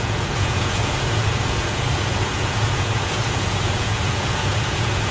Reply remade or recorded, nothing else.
remade